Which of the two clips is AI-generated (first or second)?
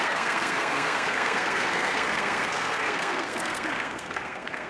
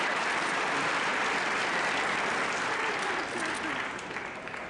first